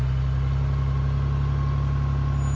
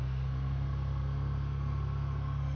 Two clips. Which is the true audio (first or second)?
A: first